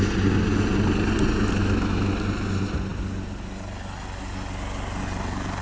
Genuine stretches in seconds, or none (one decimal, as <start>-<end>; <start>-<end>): 0.0-1.6; 2.1-5.6